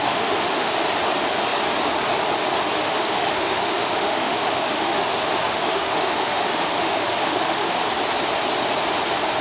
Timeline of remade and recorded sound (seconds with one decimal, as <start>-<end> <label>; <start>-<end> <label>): 0.0-0.7 remade; 0.7-2.8 recorded; 2.8-7.9 remade; 7.9-9.4 recorded